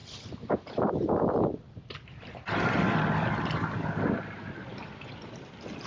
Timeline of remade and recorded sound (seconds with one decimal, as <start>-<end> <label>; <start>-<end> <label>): 0.0-5.9 recorded